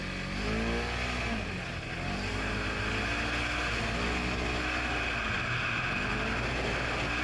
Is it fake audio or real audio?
real